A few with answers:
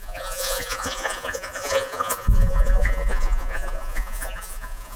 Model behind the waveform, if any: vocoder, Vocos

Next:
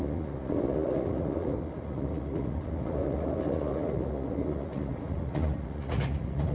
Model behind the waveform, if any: vocoder, Vocos